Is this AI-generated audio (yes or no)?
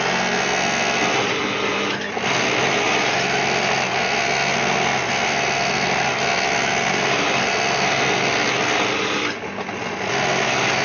no